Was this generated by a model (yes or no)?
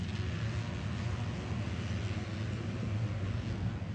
no